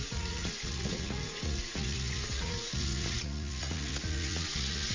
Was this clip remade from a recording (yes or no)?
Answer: yes